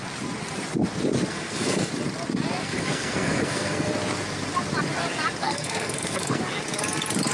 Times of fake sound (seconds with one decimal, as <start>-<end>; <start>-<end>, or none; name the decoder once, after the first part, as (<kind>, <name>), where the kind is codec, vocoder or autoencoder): 1.3-1.9 (codec, SNAC); 2.6-3.9; 5.4-6.4